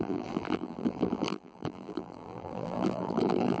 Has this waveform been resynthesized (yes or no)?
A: yes